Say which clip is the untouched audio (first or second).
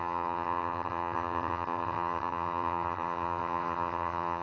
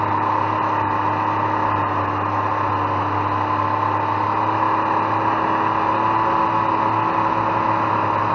second